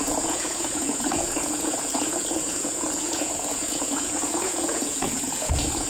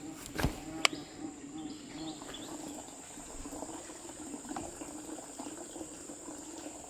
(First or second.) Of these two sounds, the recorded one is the second